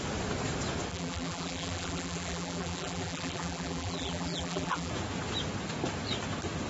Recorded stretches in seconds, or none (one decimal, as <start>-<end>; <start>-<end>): 0.0-0.9; 4.9-6.7